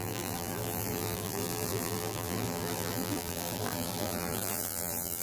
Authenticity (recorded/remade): remade